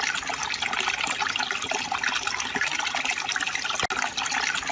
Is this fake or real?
real